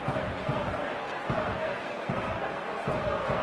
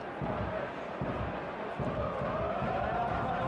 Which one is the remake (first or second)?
first